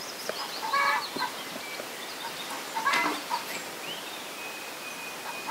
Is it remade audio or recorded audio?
recorded